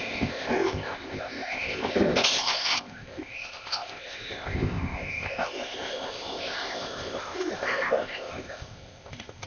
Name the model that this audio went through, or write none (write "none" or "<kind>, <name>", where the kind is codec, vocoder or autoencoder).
codec, ZipCodec